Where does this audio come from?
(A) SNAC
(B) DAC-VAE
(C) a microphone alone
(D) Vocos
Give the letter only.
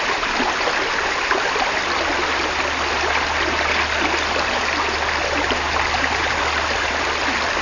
C